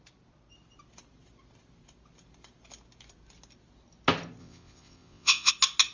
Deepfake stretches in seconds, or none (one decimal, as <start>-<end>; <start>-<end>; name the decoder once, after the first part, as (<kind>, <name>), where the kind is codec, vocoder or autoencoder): 4.4-5.5 (vocoder, WaveNeXt)